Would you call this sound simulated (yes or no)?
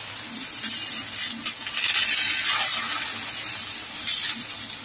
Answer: no